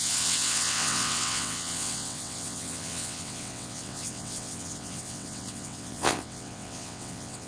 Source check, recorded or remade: remade